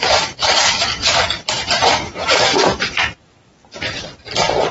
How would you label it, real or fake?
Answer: fake